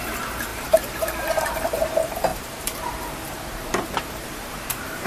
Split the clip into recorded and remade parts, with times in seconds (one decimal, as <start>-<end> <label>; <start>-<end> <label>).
0.0-5.1 remade